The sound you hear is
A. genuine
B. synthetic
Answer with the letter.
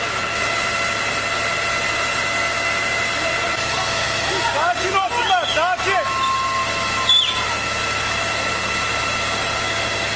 A